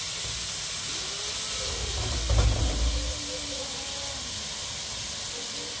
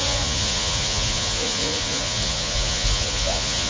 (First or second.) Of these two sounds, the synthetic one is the second